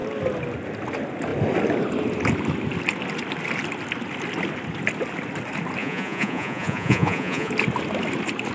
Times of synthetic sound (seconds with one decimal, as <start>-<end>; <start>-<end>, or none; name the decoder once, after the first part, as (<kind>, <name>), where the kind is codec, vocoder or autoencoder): 5.8-7.5 (vocoder, Vocos)